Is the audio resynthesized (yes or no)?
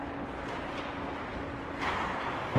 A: no